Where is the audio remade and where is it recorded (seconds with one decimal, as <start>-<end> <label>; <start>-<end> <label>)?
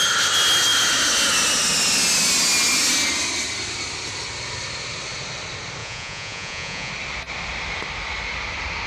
0.0-5.8 recorded; 5.8-6.9 remade; 6.9-8.9 recorded